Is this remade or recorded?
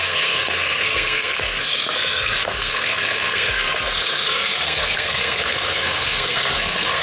remade